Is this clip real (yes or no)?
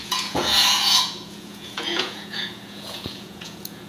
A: no